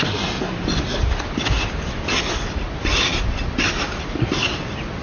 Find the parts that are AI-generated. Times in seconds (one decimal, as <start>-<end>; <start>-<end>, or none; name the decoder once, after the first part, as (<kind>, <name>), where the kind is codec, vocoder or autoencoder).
none